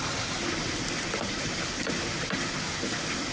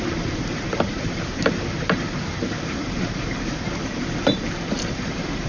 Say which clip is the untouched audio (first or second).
first